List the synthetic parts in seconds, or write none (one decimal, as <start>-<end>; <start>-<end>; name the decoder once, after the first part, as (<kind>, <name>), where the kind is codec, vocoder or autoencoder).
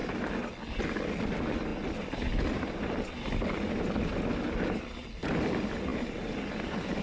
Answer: none